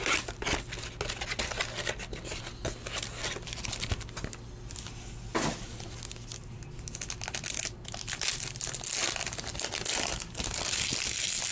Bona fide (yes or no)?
yes